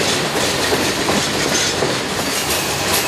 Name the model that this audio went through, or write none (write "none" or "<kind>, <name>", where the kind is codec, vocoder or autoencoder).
none